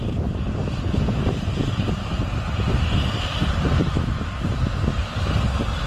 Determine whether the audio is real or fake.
real